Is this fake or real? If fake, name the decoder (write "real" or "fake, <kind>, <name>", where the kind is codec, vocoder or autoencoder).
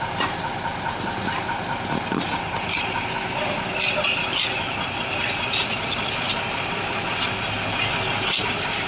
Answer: real